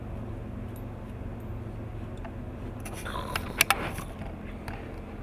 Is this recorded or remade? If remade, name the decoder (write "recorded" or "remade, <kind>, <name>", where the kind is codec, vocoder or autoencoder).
recorded